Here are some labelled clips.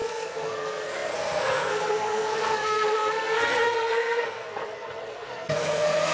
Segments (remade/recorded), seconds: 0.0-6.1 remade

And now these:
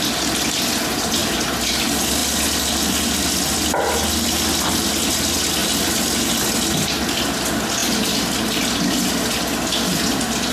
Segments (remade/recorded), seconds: 0.0-10.5 recorded